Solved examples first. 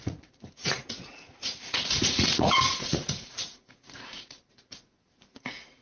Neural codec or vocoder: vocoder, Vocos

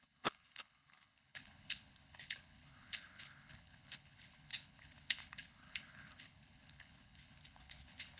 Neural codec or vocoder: codec, HILCodec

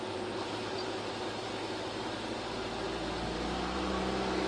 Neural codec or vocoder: vocoder, BigVGAN v2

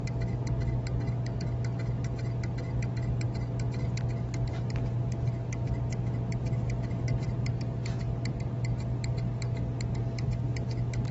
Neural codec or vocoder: none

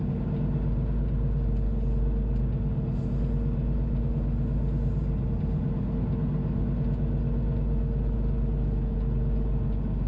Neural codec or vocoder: none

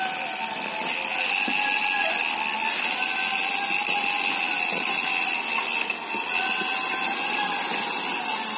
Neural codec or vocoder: none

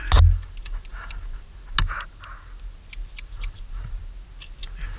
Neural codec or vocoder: none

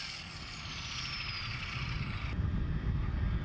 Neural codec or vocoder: none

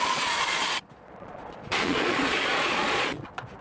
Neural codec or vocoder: vocoder, Vocos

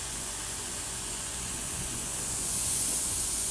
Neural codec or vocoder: vocoder, Vocos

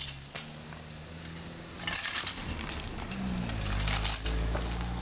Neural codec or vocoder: none